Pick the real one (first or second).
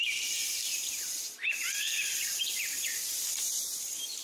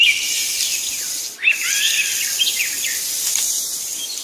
second